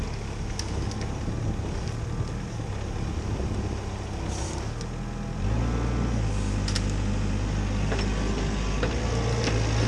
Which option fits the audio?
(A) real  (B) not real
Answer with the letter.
A